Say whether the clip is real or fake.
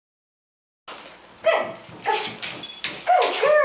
real